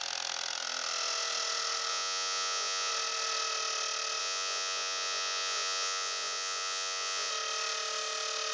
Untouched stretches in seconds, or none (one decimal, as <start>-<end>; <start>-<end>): 0.0-1.9; 2.9-4.2; 7.3-8.5